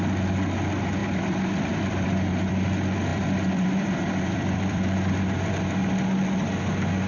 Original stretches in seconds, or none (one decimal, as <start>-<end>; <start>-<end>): 0.0-1.0; 2.5-3.1; 5.5-7.1